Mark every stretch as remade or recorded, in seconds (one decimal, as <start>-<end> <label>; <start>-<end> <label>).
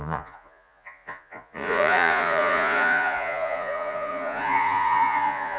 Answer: 0.0-5.6 remade